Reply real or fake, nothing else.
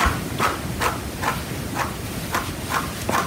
real